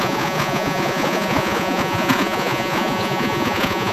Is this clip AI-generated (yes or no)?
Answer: yes